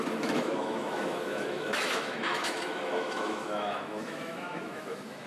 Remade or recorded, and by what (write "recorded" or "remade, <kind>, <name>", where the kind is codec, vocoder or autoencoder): remade, autoencoder, DAC-VAE